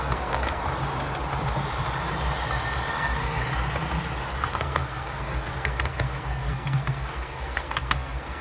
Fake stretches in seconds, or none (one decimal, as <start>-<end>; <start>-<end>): 0.0-0.6; 2.9-3.4; 4.5-8.4